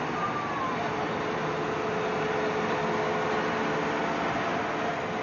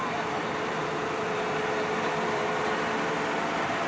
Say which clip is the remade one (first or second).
second